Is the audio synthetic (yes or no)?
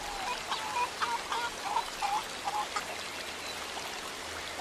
no